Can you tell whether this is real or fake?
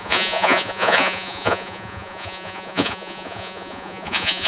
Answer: fake